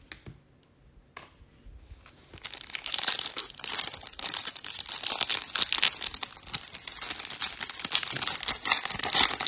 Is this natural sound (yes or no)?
yes